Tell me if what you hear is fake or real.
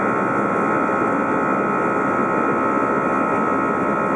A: real